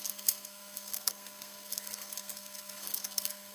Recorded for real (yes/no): no